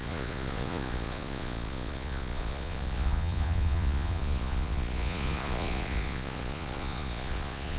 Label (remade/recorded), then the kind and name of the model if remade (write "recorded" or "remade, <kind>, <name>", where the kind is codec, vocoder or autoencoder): remade, vocoder, Vocos